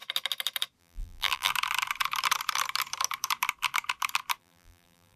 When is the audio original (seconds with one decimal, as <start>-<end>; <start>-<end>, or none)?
0.0-0.8; 1.5-4.4